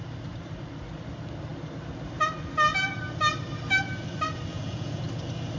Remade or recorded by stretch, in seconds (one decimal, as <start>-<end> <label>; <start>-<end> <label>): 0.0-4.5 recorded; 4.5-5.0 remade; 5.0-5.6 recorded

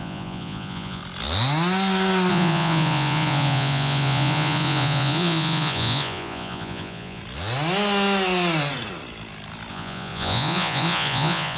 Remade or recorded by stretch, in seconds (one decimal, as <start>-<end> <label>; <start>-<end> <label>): 0.0-1.0 remade; 1.0-2.3 recorded; 2.3-7.2 remade; 7.2-9.7 recorded; 9.7-11.6 remade

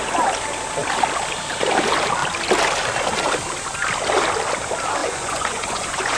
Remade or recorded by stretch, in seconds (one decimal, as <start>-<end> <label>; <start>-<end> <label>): 0.0-5.0 recorded; 5.0-6.2 remade

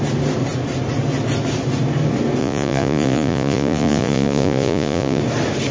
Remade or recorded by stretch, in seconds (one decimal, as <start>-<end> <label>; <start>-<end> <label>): 0.0-2.4 recorded; 2.4-5.2 remade; 5.2-5.7 recorded

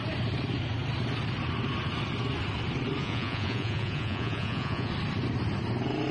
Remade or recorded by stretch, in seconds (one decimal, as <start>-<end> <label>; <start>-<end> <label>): 0.0-3.0 recorded; 3.0-4.9 remade; 4.9-6.1 recorded

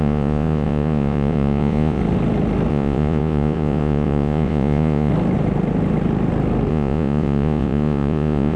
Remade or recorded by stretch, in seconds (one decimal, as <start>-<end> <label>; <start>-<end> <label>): 0.0-2.0 remade; 2.0-2.7 recorded; 2.7-5.1 remade; 5.1-6.7 recorded; 6.7-8.6 remade